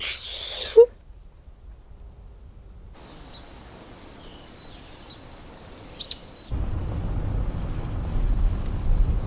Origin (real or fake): real